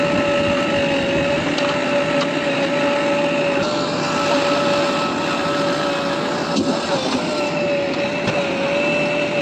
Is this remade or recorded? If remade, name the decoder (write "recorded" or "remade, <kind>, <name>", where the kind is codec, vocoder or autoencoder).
recorded